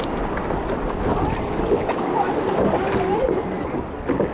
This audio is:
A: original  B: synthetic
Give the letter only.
A